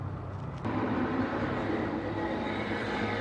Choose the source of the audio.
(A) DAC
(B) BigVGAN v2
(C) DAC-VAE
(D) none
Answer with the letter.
D